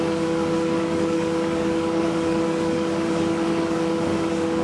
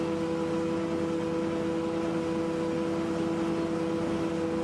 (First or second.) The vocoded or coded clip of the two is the first